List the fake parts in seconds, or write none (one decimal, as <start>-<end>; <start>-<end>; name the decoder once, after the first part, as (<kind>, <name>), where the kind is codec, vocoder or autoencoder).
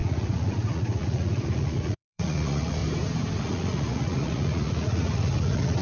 0.0-2.8 (vocoder, Vocos); 3.4-5.8